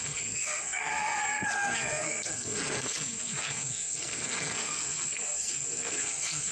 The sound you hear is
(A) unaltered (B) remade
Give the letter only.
B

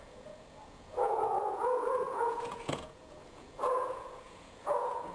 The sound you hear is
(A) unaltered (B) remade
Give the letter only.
B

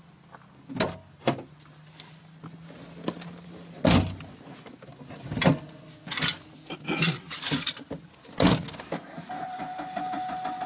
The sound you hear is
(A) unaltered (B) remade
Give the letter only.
A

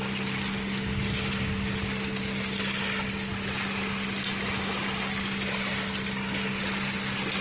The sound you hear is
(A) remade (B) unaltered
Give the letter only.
B